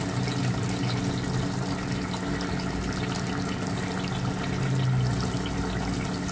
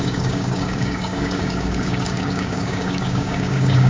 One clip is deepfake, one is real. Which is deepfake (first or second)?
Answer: second